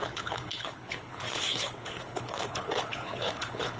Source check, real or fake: fake